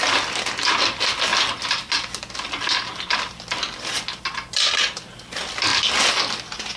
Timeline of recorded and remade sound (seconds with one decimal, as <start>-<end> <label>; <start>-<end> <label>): 0.0-6.8 recorded